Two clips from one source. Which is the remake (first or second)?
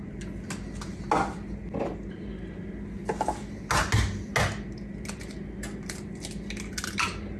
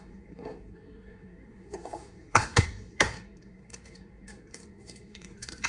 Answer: second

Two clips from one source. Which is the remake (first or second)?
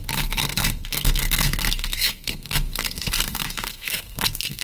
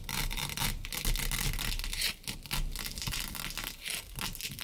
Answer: first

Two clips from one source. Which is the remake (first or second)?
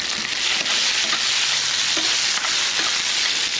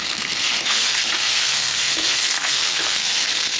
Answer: second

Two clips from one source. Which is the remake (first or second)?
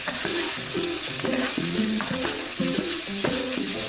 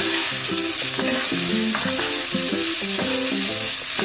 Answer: first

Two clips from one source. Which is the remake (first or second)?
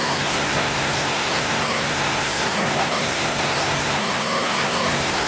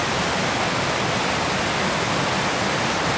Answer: first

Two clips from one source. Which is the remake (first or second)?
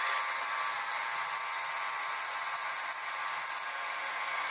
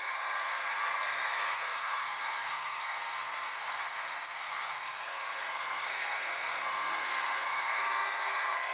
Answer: second